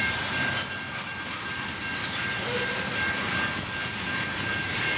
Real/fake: real